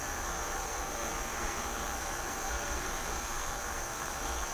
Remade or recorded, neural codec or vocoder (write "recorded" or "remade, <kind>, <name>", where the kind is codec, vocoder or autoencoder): remade, codec, SNAC